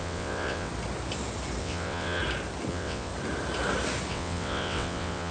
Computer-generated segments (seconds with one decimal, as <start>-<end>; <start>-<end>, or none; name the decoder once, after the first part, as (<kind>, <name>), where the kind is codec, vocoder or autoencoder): 0.0-0.7 (vocoder, WaveNeXt); 1.6-2.2; 2.7-3.1; 4.1-5.3